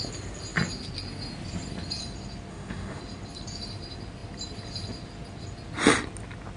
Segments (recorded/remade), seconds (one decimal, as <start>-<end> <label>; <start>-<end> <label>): 0.0-2.5 recorded; 2.5-3.0 remade; 3.0-6.6 recorded